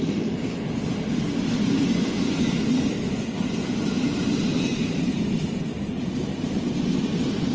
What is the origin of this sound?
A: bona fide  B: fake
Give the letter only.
B